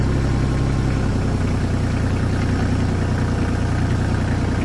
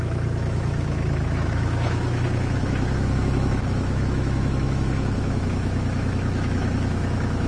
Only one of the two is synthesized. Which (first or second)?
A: second